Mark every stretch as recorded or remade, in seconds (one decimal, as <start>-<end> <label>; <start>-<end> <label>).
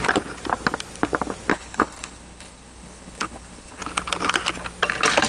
0.0-1.5 recorded; 1.5-3.8 remade; 3.8-5.3 recorded